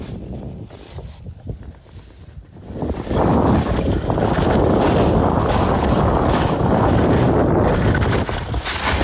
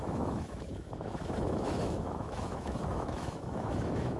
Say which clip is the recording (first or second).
first